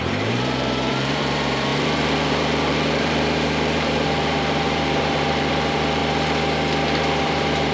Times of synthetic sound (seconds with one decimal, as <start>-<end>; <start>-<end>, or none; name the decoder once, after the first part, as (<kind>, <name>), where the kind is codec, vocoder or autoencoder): 0.0-6.0 (vocoder, BigVGAN v2); 7.2-7.7